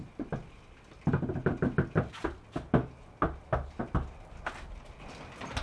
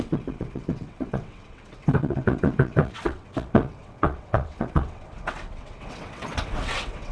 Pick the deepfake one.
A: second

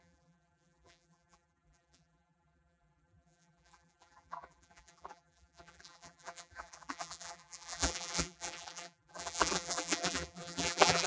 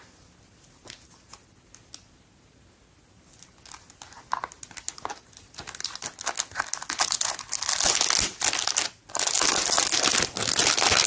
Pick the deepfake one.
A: first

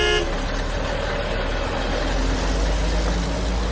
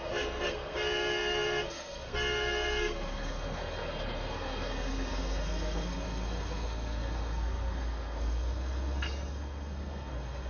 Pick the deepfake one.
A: second